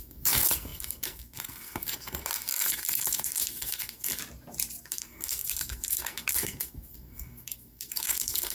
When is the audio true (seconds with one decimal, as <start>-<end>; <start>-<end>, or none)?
4.2-4.8